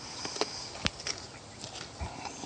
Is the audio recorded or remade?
recorded